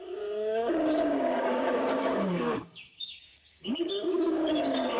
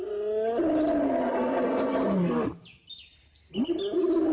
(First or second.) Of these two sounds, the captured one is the second